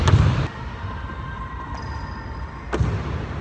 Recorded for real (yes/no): yes